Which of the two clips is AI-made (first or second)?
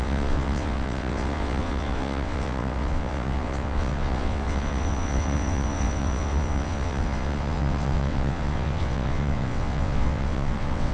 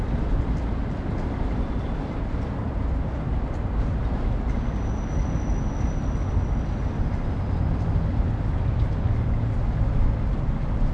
first